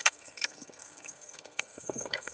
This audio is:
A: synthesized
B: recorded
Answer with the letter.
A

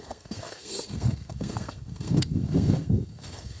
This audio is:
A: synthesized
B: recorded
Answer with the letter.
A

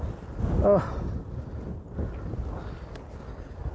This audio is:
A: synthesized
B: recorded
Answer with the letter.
B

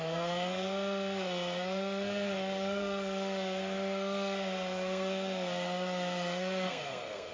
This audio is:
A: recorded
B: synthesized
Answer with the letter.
B